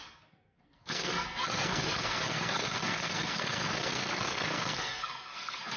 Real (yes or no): no